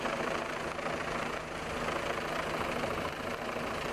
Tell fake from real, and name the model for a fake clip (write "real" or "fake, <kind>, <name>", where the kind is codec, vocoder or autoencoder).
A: real